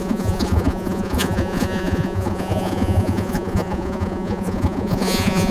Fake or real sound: fake